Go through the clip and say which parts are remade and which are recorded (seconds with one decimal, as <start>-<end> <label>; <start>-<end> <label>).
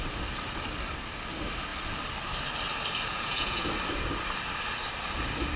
0.0-3.1 recorded; 3.1-3.7 remade; 3.7-5.6 recorded